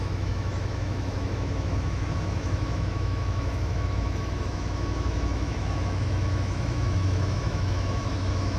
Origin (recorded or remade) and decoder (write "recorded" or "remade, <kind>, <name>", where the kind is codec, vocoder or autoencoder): remade, autoencoder, DAC-VAE